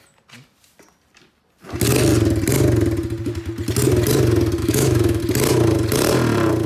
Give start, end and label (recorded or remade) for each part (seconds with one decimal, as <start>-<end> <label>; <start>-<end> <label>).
0.0-4.6 recorded; 4.6-5.2 remade; 5.2-6.7 recorded